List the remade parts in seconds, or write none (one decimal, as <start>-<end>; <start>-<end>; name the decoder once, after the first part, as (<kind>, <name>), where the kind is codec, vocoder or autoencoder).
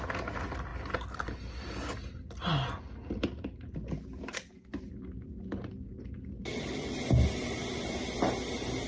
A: none